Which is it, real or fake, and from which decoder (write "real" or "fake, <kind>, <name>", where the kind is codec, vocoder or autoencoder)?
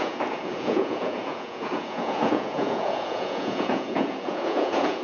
fake, vocoder, Vocos